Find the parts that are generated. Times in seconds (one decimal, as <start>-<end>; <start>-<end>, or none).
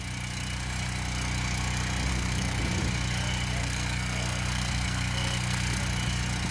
2.1-2.6; 3.6-5.8